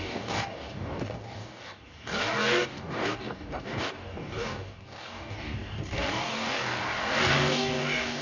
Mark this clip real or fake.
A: fake